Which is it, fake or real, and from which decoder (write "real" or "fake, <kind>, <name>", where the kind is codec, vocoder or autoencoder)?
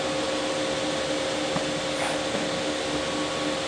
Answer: real